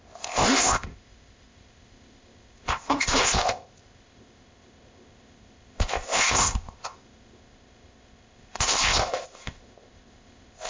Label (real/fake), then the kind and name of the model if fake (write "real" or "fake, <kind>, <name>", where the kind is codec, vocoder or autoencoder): fake, codec, ZipCodec